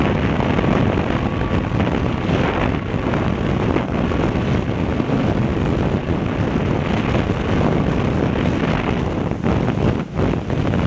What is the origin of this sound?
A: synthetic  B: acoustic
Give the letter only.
B